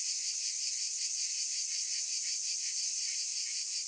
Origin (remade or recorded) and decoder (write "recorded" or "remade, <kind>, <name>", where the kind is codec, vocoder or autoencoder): recorded